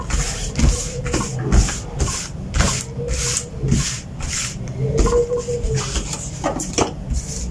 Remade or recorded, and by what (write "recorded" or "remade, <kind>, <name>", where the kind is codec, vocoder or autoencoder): recorded